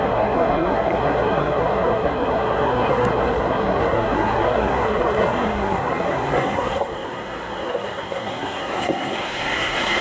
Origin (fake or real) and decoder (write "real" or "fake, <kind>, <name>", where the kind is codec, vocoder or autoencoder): fake, codec, SNAC